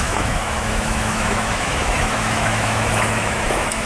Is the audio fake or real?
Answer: fake